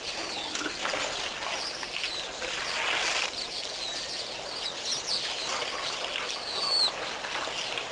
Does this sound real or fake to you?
real